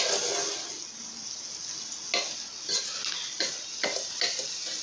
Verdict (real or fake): real